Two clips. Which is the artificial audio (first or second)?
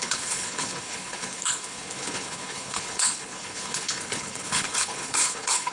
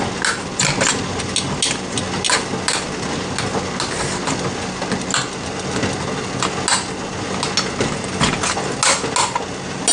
first